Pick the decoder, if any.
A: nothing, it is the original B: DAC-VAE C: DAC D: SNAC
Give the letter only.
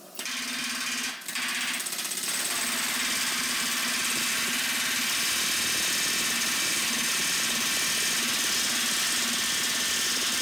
A